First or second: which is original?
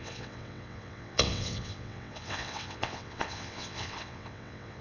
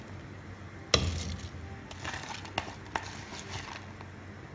second